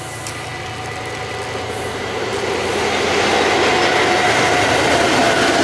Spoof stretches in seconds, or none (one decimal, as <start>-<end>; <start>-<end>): none